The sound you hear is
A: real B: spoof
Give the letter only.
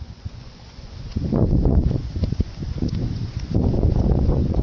B